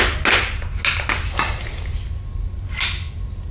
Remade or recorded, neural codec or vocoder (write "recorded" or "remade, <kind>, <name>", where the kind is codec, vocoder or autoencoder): recorded